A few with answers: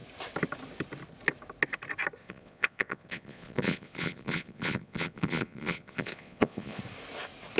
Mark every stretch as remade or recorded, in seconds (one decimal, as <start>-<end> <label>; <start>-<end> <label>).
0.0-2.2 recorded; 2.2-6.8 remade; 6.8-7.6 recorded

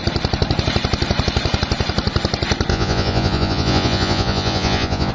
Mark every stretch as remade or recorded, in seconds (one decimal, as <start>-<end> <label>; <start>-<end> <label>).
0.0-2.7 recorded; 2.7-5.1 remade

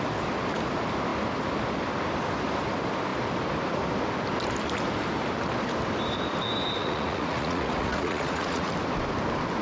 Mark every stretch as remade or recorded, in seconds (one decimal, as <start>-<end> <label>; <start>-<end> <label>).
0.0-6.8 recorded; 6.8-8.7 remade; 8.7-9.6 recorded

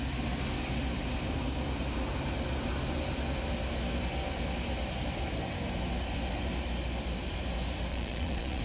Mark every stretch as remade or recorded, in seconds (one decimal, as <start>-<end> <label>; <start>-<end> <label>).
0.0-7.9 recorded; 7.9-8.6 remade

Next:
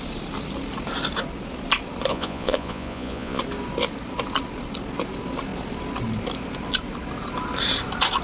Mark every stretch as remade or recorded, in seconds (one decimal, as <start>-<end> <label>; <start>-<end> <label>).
0.0-2.1 recorded; 2.1-3.4 remade; 3.4-8.2 recorded

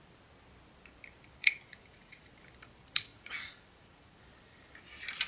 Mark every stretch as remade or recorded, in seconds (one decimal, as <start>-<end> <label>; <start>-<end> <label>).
0.0-1.4 recorded; 1.4-2.3 remade; 2.3-3.1 recorded; 3.1-4.2 remade; 4.2-5.3 recorded

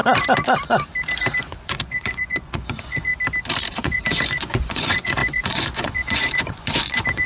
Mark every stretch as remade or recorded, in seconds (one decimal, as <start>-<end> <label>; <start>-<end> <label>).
0.0-1.4 recorded; 1.4-3.1 remade; 3.1-3.7 recorded; 3.7-7.3 remade

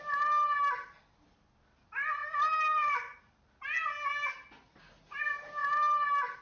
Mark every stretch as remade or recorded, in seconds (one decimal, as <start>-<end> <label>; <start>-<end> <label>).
0.0-6.4 recorded